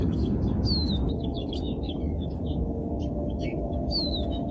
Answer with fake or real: fake